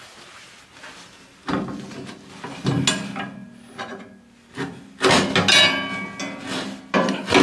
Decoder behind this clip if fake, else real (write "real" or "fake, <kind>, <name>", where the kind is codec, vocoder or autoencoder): real